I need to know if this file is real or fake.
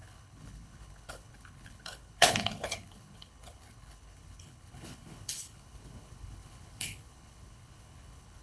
fake